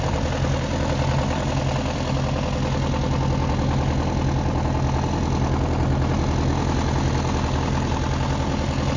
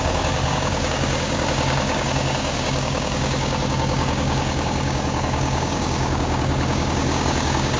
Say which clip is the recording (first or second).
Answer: first